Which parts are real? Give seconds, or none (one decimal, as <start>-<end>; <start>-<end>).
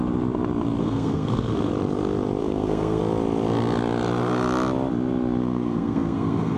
0.0-0.8; 1.7-2.4; 3.0-5.4